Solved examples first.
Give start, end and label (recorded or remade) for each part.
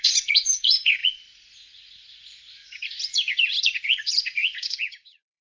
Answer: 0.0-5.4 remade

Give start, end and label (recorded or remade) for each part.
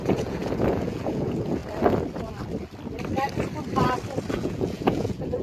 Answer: 0.0-1.6 remade; 1.6-4.3 recorded; 4.3-5.4 remade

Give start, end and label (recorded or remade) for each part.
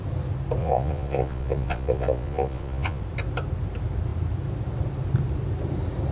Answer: 0.0-0.6 recorded; 0.6-3.0 remade; 3.0-6.1 recorded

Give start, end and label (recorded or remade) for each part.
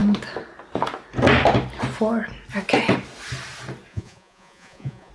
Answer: 0.0-3.9 recorded; 3.9-5.1 remade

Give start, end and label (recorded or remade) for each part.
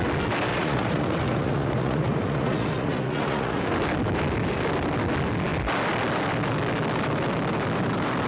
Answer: 0.0-0.5 recorded; 0.5-3.6 remade; 3.6-8.3 recorded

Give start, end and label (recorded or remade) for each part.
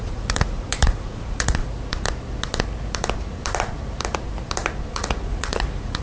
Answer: 0.0-1.6 remade; 1.6-4.9 recorded; 4.9-6.0 remade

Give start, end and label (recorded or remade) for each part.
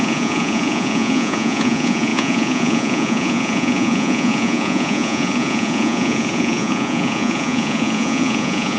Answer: 0.0-8.8 remade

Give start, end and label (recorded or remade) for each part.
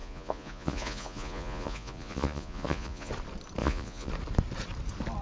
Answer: 0.0-3.1 remade; 3.1-3.6 recorded; 3.6-4.1 remade; 4.1-5.2 recorded